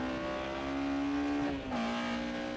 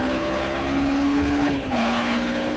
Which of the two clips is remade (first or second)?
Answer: second